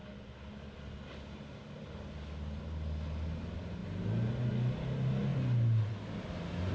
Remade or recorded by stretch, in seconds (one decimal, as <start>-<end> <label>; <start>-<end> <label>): 0.0-6.7 recorded